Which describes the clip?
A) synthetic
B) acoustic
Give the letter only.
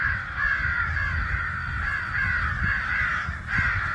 B